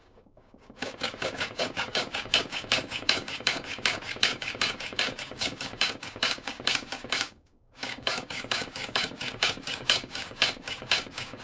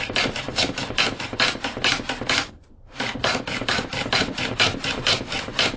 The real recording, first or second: second